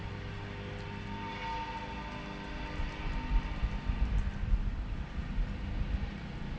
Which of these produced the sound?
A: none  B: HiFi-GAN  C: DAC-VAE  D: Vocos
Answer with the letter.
A